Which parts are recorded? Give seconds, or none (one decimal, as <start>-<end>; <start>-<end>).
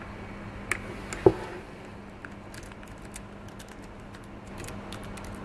0.0-5.4